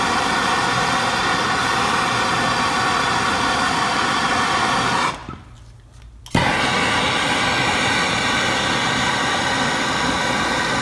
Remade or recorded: recorded